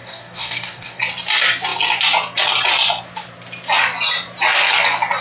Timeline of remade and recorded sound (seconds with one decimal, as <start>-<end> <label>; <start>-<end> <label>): 0.0-1.0 remade; 1.0-5.2 recorded